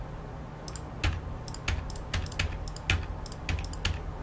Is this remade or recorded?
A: recorded